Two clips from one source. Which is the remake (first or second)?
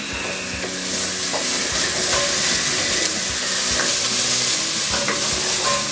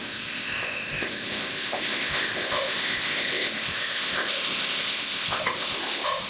second